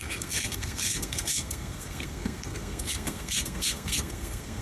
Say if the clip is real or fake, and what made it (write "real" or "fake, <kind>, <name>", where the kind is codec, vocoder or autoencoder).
fake, codec, SNAC